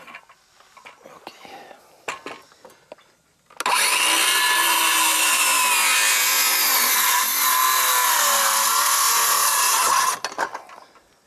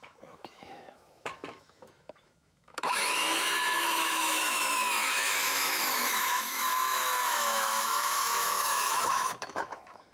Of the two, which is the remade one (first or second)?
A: second